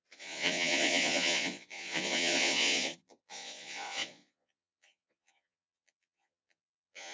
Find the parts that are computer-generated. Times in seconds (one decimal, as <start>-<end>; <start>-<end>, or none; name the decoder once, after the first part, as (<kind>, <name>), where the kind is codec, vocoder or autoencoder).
0.0-7.1 (vocoder, Vocos)